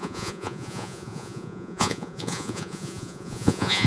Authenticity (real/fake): fake